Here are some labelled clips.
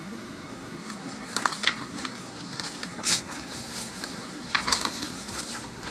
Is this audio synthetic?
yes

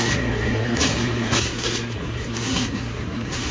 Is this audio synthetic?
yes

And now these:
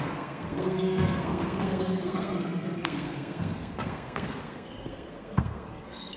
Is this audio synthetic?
yes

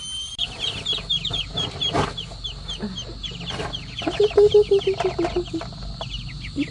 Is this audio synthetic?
no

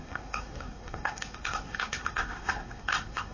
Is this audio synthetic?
yes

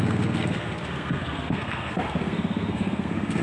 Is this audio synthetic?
yes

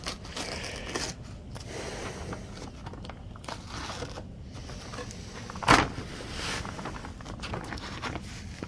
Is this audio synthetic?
no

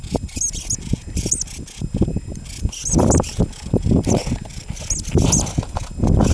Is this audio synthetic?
no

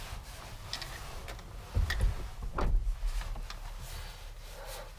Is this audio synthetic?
no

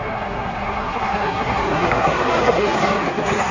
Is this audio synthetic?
yes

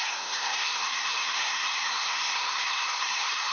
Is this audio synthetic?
yes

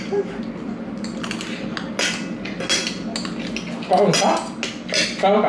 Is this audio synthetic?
no